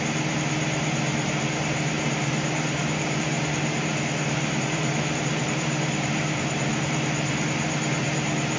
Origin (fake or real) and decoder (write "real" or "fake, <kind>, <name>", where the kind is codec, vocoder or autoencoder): fake, vocoder, BigVGAN v2